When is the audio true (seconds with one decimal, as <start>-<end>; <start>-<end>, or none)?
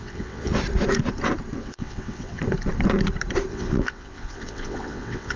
0.6-1.6; 2.4-3.5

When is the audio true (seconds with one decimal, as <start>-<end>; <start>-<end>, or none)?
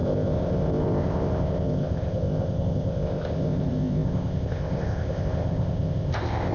none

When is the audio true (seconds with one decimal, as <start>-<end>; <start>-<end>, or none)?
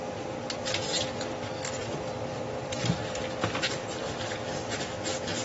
0.0-5.4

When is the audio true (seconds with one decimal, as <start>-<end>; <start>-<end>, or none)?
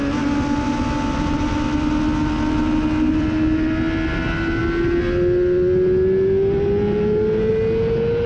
0.0-8.3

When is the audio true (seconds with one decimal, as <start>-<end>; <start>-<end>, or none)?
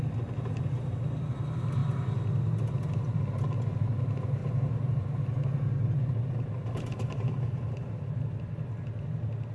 0.0-4.4; 5.2-9.5